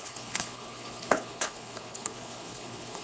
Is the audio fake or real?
fake